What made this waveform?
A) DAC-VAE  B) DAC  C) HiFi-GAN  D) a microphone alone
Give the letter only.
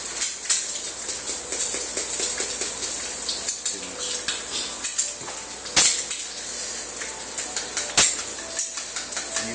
D